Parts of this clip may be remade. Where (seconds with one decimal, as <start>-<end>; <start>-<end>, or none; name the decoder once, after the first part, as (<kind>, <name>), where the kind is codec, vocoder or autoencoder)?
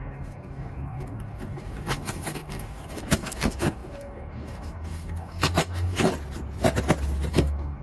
0.0-6.1 (codec, DAC); 7.3-7.8